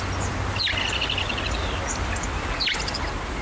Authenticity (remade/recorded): recorded